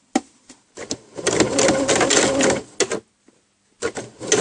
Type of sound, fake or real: real